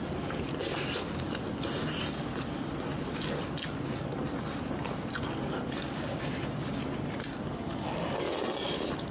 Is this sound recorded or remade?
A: recorded